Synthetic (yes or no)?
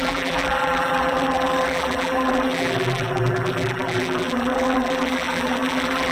yes